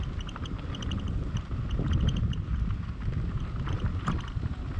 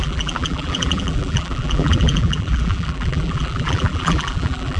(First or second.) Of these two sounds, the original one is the first